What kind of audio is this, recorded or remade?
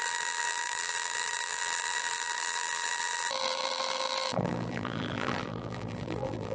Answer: remade